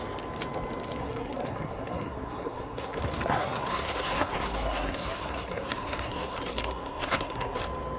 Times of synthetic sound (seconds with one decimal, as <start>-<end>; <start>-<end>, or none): 1.0-3.0; 3.4-7.6

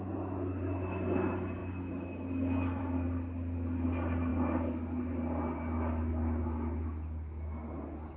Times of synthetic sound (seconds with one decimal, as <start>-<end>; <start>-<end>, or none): none